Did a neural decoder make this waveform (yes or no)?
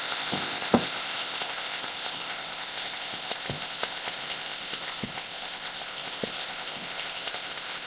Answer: yes